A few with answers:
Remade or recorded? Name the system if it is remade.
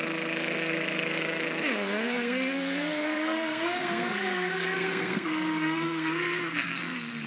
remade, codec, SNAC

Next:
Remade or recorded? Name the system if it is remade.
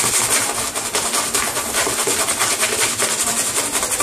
recorded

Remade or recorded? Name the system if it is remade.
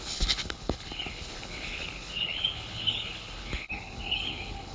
remade, codec, HILCodec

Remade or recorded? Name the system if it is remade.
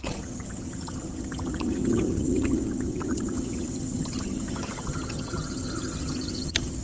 remade, vocoder, HiFi-GAN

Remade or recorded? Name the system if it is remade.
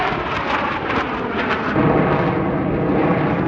recorded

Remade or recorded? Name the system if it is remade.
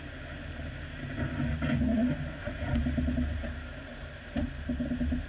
recorded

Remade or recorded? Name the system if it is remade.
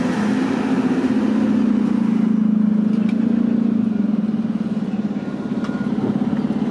recorded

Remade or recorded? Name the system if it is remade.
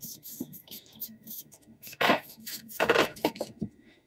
remade, autoencoder, DAC-VAE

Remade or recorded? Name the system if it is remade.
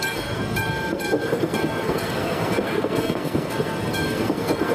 remade, codec, SNAC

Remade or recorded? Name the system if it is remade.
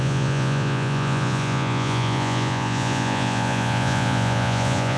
remade, vocoder, Vocos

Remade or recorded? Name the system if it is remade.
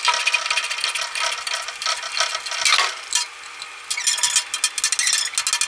recorded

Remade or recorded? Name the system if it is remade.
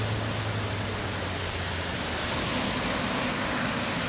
recorded